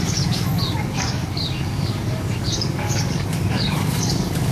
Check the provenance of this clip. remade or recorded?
remade